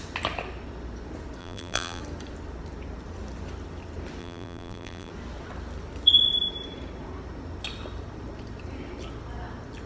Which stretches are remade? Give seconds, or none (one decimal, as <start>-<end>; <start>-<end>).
1.4-2.0; 4.2-5.1